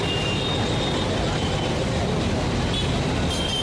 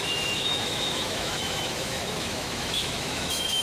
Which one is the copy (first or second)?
second